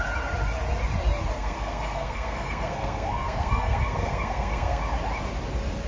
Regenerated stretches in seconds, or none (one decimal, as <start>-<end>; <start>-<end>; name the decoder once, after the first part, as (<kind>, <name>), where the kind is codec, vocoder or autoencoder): 1.3-4.8 (codec, SNAC)